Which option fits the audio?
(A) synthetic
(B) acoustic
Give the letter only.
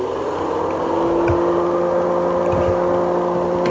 B